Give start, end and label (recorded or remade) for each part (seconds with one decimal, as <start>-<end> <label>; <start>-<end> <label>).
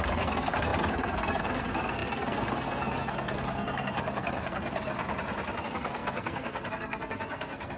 0.0-4.9 remade; 4.9-5.6 recorded; 5.6-7.8 remade